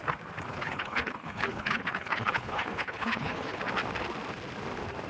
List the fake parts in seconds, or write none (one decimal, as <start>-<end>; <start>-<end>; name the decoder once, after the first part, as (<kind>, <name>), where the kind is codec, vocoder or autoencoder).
0.5-3.6 (codec, HILCodec)